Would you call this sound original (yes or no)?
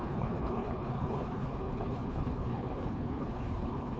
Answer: no